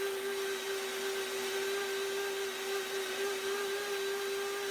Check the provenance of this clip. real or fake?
real